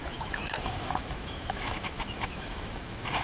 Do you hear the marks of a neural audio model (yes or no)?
yes